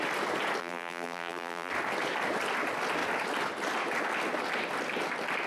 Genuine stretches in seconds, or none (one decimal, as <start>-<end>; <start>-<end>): 0.0-0.6; 1.7-5.5